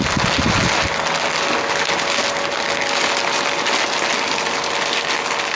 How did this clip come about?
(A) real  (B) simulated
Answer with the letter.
A